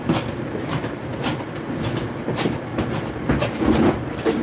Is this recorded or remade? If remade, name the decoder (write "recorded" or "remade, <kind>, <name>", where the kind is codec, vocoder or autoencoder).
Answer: recorded